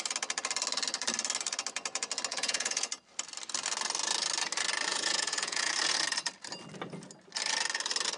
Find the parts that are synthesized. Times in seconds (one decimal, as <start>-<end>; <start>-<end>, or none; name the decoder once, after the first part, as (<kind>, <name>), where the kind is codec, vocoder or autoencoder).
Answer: 2.3-2.9 (vocoder, Vocos); 4.9-5.7